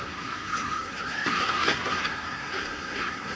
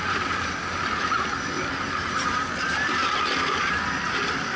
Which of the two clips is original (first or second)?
second